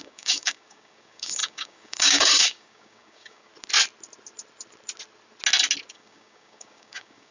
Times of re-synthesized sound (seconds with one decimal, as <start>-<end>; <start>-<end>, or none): 0.0-3.5; 5.9-7.3